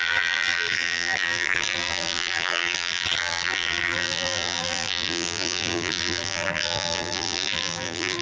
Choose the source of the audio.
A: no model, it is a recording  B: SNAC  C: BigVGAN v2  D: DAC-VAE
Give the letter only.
C